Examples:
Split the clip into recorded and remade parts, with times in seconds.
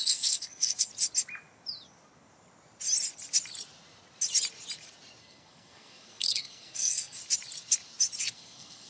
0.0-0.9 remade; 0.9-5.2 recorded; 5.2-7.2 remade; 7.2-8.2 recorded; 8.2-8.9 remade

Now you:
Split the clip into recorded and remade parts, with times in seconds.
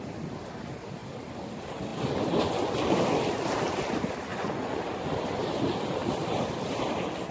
0.0-4.3 recorded; 4.3-4.8 remade; 4.8-7.3 recorded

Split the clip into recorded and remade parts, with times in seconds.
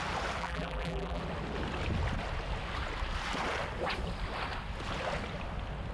0.0-0.4 recorded; 0.4-1.2 remade; 1.2-5.9 recorded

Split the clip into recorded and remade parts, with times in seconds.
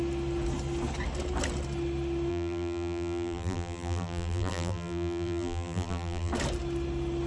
0.0-2.3 recorded; 2.3-6.3 remade; 6.3-7.3 recorded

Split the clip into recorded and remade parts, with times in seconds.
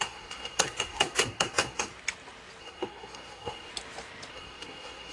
0.0-1.9 remade; 1.9-2.6 recorded; 2.6-3.7 remade; 3.7-4.3 recorded; 4.3-5.1 remade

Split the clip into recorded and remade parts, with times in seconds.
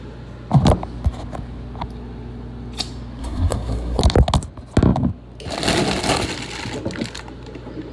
0.0-3.2 recorded; 3.2-4.0 remade; 4.0-7.9 recorded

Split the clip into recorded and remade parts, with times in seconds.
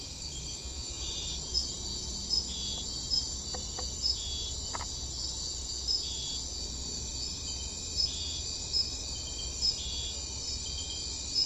0.0-0.5 recorded; 0.5-1.0 remade; 1.0-11.5 recorded